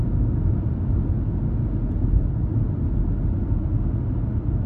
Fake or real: real